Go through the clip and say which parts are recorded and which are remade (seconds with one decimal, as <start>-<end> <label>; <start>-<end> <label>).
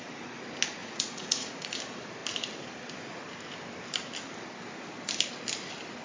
0.0-0.8 recorded; 0.8-1.8 remade; 1.8-6.0 recorded